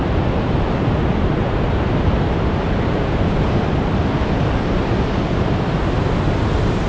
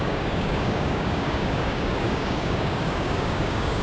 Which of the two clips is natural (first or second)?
first